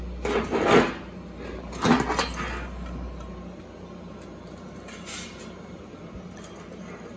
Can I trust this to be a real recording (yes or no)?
yes